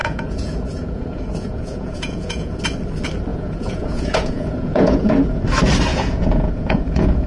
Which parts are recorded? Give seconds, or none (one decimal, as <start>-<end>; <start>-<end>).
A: 2.6-3.3; 5.4-5.9